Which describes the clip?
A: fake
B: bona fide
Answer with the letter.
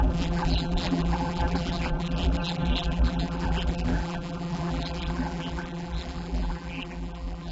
A